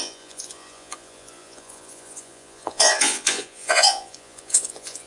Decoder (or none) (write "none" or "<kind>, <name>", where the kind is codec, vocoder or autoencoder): vocoder, Vocos